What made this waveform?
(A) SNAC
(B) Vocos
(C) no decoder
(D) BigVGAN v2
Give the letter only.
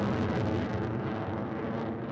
C